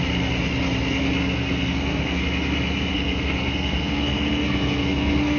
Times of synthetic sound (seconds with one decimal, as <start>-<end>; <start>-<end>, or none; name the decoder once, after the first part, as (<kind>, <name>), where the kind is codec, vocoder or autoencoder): 1.2-2.2 (codec, SNAC); 2.9-5.4